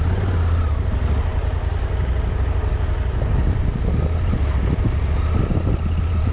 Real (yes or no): yes